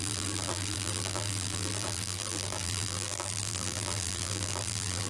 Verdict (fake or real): fake